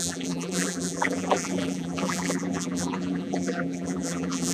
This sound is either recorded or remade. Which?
remade